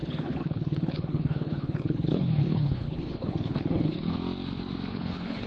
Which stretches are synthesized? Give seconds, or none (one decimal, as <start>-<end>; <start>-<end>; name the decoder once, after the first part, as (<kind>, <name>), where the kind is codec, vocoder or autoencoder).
0.0-4.2 (codec, HILCodec); 4.9-5.5